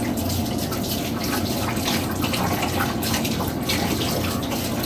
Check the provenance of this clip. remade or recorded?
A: recorded